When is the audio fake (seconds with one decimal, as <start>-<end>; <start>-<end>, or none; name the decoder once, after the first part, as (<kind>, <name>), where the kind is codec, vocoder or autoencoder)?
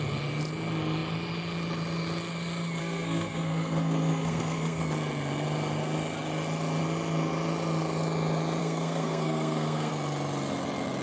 2.8-4.8 (codec, SNAC); 8.6-9.9